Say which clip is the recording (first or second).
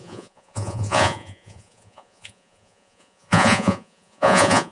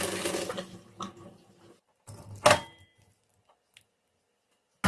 second